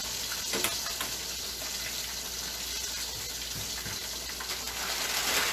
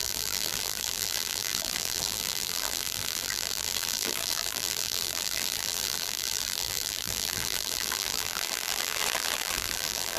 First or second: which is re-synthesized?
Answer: second